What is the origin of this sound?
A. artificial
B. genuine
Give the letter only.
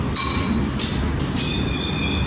B